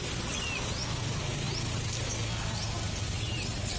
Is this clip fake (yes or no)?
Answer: no